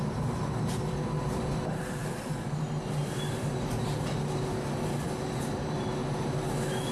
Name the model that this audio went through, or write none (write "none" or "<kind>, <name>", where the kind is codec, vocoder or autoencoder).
none